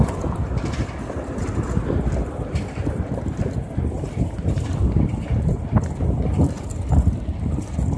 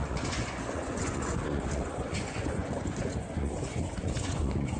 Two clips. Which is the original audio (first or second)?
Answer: first